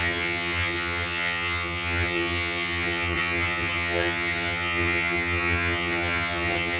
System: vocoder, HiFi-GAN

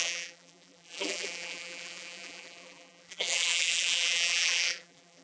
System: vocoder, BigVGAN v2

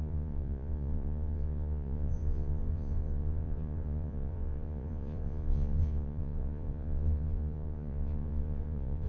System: vocoder, Vocos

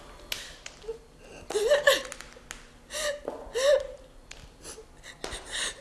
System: none